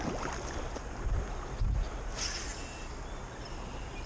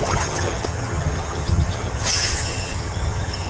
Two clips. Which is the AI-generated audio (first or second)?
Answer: second